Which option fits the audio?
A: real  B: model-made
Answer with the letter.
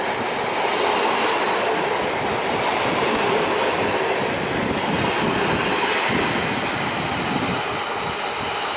A